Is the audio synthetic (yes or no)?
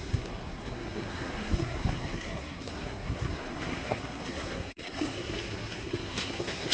yes